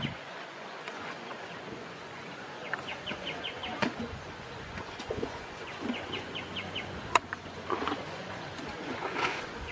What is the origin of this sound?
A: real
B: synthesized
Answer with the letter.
B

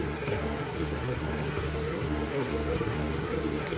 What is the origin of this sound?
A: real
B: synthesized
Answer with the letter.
B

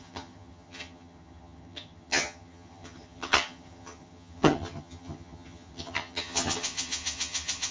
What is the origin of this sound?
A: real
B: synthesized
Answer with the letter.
B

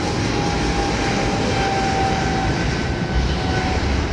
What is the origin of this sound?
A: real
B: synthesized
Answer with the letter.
A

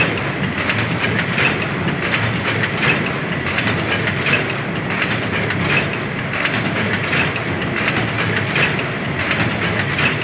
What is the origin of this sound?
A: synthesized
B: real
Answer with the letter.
B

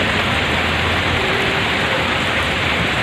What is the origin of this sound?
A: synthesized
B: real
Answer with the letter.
A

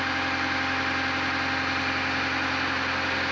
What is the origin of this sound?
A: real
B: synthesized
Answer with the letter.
A